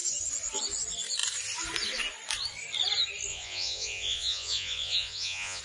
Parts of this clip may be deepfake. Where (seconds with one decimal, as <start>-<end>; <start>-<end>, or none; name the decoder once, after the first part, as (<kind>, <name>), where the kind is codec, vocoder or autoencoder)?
3.3-5.6 (vocoder, Vocos)